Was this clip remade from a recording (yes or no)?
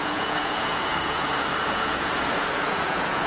yes